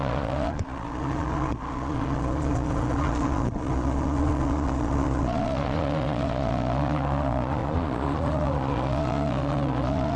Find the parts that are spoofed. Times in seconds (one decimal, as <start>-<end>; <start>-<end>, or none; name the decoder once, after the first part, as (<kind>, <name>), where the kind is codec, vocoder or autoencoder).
0.0-10.2 (vocoder, Vocos)